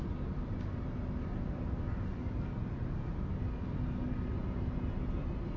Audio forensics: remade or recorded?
recorded